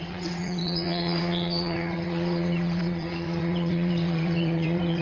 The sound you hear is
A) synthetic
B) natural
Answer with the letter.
A